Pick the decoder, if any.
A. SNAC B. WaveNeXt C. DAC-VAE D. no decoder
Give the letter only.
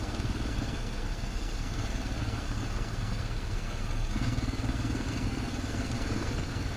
A